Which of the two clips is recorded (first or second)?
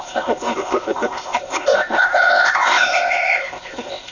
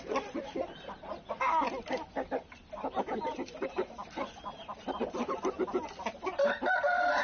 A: second